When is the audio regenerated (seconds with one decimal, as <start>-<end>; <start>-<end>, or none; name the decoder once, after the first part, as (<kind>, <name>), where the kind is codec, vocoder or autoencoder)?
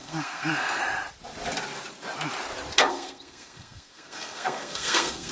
0.0-0.8 (codec, SNAC); 2.8-5.3